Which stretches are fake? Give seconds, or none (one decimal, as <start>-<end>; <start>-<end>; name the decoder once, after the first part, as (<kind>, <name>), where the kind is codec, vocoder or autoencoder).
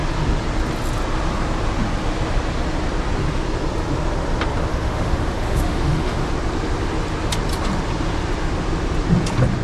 4.7-6.3 (autoencoder, DAC-VAE)